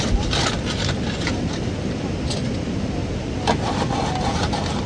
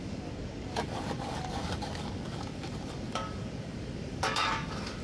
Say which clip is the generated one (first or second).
second